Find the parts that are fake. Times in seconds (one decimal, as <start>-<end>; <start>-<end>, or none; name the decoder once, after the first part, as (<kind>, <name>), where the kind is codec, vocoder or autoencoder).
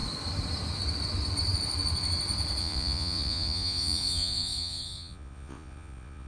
2.6-6.3 (vocoder, Vocos)